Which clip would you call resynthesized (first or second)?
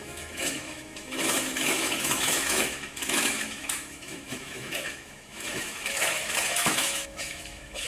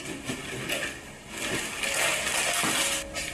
first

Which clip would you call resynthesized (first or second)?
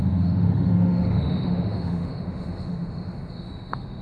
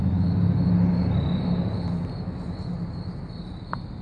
first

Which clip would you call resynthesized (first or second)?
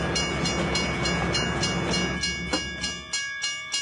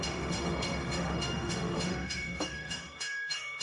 second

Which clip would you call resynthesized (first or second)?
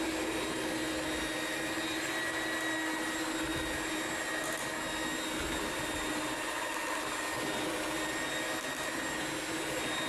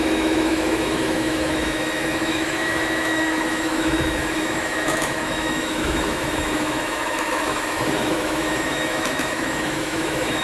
second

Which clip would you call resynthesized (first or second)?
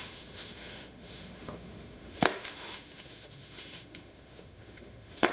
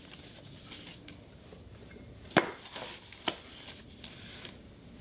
first